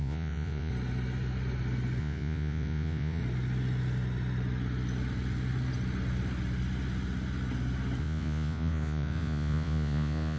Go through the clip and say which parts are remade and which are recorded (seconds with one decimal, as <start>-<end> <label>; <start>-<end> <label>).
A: 0.0-0.7 remade; 0.7-2.0 recorded; 2.0-3.2 remade; 3.2-8.0 recorded; 8.0-10.4 remade